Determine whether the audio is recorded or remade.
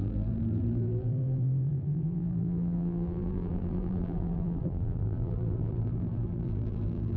remade